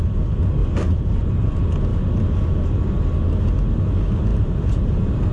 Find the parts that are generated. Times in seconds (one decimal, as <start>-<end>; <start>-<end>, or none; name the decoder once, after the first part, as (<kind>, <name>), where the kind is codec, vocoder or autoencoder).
0.6-1.2 (vocoder, BigVGAN v2); 4.3-5.3